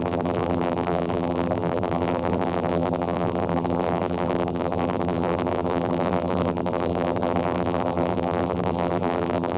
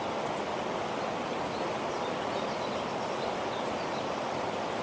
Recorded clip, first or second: second